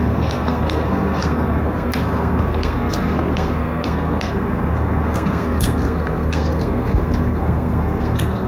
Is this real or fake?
fake